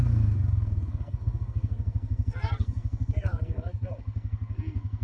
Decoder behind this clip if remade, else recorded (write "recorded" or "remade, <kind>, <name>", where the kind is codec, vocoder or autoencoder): remade, codec, SNAC